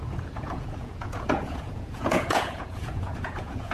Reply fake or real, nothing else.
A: fake